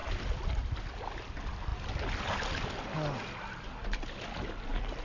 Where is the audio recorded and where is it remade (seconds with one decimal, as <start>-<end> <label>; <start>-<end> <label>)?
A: 0.0-5.0 recorded